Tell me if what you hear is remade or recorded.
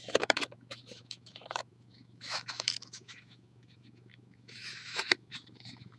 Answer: remade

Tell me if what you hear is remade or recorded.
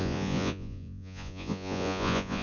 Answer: remade